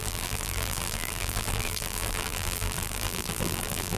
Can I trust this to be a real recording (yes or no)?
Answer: no